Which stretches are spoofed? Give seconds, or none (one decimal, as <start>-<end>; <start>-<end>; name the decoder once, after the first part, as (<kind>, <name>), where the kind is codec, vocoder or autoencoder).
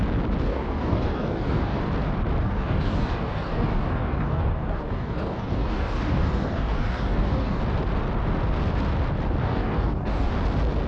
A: 0.5-1.8 (codec, DAC); 2.4-7.6; 9.4-10.3